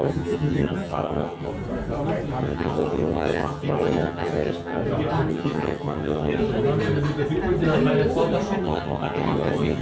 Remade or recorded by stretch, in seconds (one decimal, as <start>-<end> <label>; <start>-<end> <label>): 0.0-1.5 remade; 1.5-2.4 recorded; 2.4-4.8 remade; 4.8-5.3 recorded; 5.3-6.4 remade; 6.4-8.6 recorded; 8.6-9.8 remade